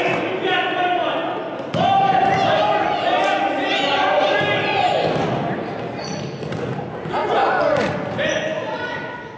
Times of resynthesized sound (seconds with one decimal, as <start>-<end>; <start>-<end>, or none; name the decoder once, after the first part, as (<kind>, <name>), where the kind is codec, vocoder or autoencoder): none